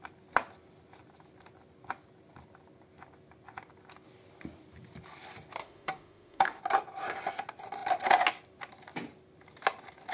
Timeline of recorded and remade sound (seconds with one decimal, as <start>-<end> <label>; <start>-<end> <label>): 0.0-5.6 recorded; 5.6-6.6 remade; 6.6-10.1 recorded